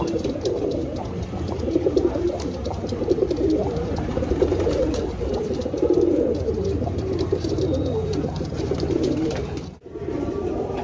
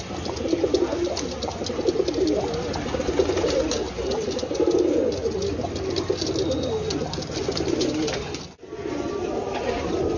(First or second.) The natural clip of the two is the second